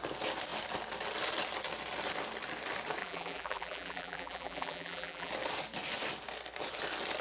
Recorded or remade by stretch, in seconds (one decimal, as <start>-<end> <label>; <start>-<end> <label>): 0.0-3.0 recorded; 3.0-5.3 remade; 5.3-7.2 recorded